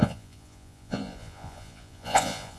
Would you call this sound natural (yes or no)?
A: no